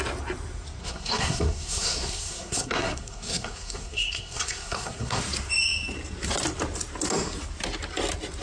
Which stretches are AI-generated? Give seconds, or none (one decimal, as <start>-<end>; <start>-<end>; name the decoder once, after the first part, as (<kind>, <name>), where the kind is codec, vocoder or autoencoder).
0.8-5.2 (codec, SNAC)